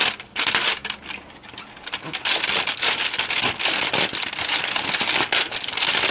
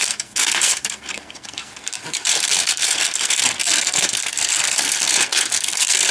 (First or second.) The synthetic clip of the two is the second